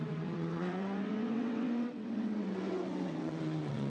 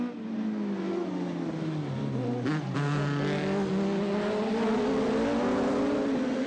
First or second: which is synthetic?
first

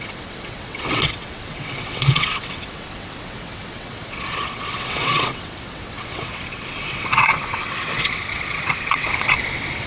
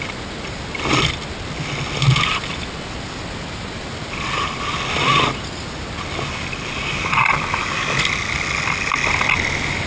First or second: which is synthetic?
first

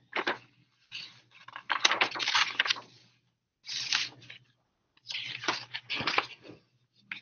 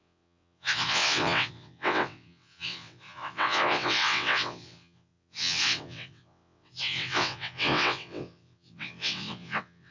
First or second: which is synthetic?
second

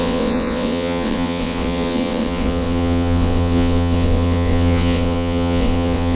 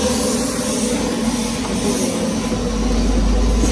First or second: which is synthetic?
first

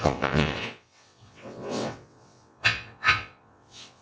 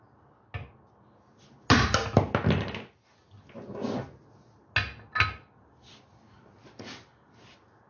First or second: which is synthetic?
first